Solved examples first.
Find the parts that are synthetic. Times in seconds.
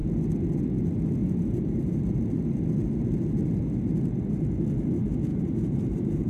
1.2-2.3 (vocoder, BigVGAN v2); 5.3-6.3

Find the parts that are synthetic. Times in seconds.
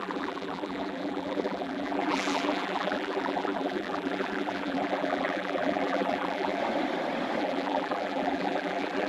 0.0-6.6 (vocoder, BigVGAN v2); 7.4-9.1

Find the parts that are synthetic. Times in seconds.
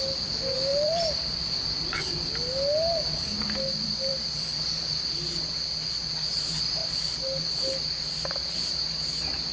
0.7-1.7 (vocoder, BigVGAN v2); 4.1-5.9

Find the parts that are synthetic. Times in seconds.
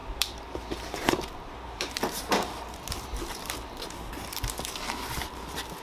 0.0-3.5 (vocoder, BigVGAN v2)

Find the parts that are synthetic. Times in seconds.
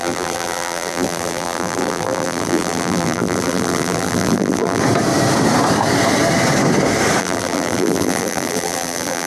0.0-4.8 (vocoder, BigVGAN v2); 7.2-9.3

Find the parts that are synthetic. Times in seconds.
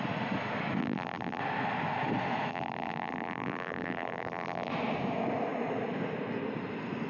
0.8-1.4 (vocoder, BigVGAN v2); 2.5-4.7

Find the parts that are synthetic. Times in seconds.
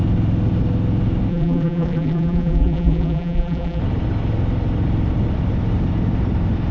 1.3-3.8 (vocoder, BigVGAN v2)